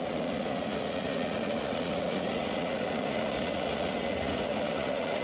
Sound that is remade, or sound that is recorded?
remade